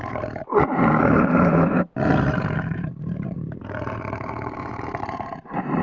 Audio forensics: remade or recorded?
remade